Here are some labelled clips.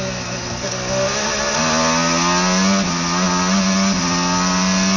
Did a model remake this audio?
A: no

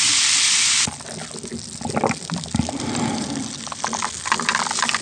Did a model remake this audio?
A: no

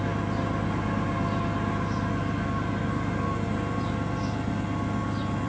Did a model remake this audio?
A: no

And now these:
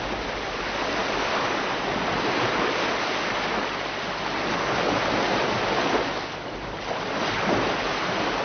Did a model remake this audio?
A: no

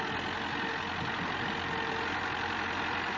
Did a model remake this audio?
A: no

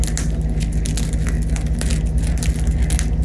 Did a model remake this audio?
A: no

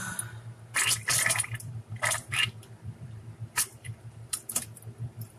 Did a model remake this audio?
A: yes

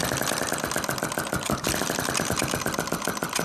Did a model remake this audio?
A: no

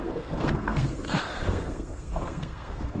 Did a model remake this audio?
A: yes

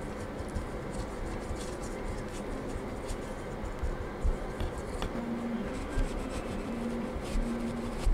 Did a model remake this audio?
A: no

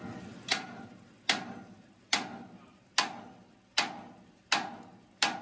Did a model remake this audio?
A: no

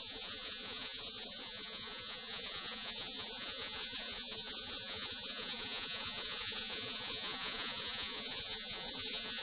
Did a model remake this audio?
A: yes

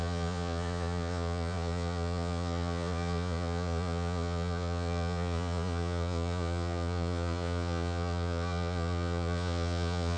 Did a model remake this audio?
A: yes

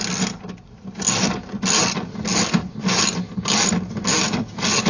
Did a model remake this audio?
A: no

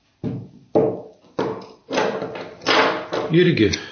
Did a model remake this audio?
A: no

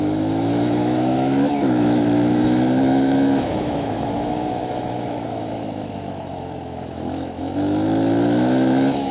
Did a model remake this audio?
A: yes